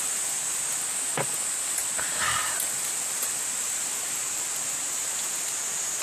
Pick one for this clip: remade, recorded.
recorded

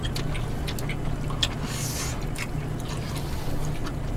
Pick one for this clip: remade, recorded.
recorded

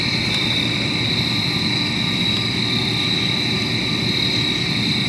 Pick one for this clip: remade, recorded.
recorded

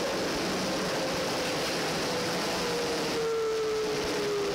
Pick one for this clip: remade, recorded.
recorded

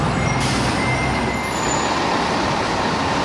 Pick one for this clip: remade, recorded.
recorded